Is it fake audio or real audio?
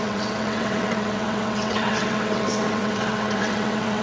fake